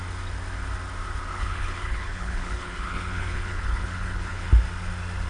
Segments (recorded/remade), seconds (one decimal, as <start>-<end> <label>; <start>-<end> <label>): 0.0-1.3 recorded; 1.3-4.5 remade; 4.5-5.3 recorded